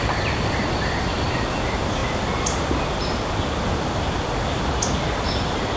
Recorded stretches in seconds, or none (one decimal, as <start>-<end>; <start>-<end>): 0.0-5.8